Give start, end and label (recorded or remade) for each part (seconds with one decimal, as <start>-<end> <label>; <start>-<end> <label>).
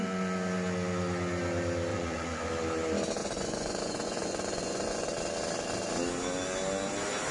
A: 0.0-1.9 recorded; 1.9-2.5 remade; 2.5-3.2 recorded; 3.2-5.1 remade; 5.1-7.3 recorded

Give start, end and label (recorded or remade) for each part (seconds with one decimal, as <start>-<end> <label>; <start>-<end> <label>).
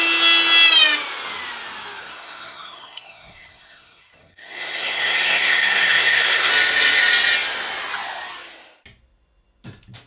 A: 0.0-2.0 recorded; 2.0-6.5 remade; 6.5-10.1 recorded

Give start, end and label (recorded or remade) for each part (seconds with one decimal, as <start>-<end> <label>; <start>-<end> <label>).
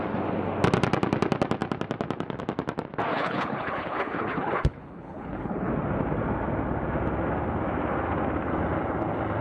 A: 0.0-3.1 recorded; 3.1-5.7 remade; 5.7-9.4 recorded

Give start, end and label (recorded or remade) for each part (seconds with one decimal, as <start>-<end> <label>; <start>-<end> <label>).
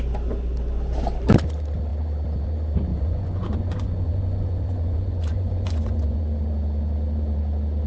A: 0.0-2.9 recorded; 2.9-6.2 remade; 6.2-7.9 recorded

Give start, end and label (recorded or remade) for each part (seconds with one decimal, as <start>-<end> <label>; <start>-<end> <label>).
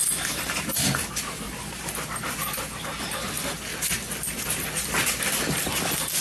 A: 0.0-6.2 recorded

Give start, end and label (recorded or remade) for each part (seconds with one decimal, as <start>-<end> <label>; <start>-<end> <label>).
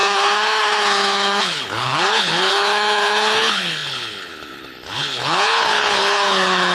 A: 0.0-6.7 remade